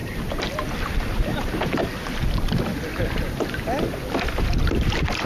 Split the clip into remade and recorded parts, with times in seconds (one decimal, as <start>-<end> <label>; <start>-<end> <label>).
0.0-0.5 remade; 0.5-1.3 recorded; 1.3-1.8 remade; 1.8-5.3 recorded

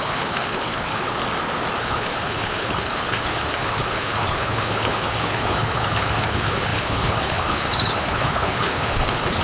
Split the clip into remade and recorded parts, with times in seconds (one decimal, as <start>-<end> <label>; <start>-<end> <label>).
0.0-1.2 remade; 1.2-1.8 recorded; 1.8-9.4 remade

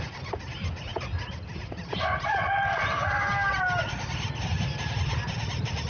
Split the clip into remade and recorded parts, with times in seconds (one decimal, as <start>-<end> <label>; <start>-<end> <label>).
0.0-5.9 recorded

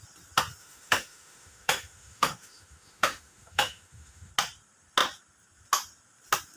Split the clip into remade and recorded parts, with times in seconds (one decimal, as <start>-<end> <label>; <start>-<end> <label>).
0.0-0.6 recorded; 0.6-4.3 remade; 4.3-6.6 recorded

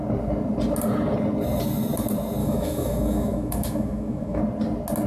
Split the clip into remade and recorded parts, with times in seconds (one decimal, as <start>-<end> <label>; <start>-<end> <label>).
0.0-2.4 recorded; 2.4-4.4 remade; 4.4-5.1 recorded

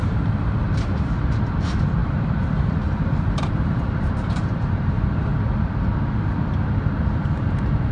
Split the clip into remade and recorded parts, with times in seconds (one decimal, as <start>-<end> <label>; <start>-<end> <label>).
0.0-5.3 remade; 5.3-6.6 recorded; 6.6-7.9 remade